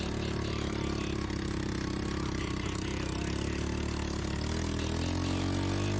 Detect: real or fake real